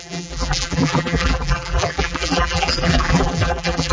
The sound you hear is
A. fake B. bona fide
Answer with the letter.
A